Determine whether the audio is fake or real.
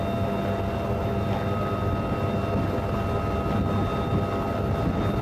real